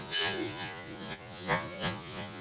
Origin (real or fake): fake